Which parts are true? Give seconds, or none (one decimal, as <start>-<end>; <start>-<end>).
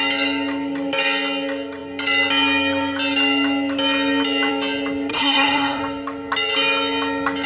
0.0-5.1; 5.8-7.5